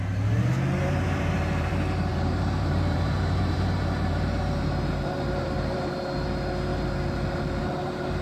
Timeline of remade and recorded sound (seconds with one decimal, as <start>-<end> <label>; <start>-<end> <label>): 0.0-0.8 recorded; 0.8-1.7 remade; 1.7-2.1 recorded; 2.1-5.9 remade; 5.9-6.7 recorded; 6.7-7.6 remade; 7.6-8.2 recorded

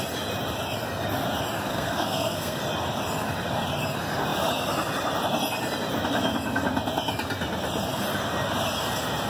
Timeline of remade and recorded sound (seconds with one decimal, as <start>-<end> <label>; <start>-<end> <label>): 0.0-1.7 recorded; 1.7-2.6 remade; 2.6-9.3 recorded

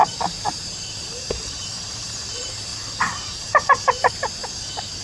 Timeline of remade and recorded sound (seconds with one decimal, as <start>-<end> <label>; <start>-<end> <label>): 0.0-2.7 remade; 2.7-3.2 recorded; 3.2-4.4 remade; 4.4-5.0 recorded

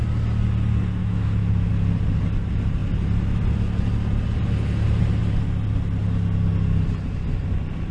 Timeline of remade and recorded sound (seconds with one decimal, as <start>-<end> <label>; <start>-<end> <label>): 0.0-1.0 recorded; 1.0-1.7 remade; 1.7-7.9 recorded

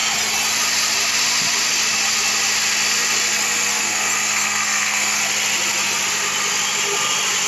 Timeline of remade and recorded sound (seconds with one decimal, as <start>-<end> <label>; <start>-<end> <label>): 0.0-3.7 recorded; 3.7-5.2 remade; 5.2-7.5 recorded

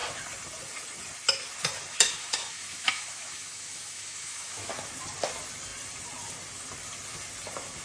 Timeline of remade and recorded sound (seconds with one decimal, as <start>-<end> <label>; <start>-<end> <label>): 0.0-1.9 recorded; 1.9-4.7 remade; 4.7-7.8 recorded